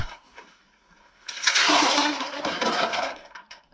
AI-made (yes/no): yes